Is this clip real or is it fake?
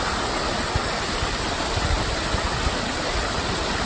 real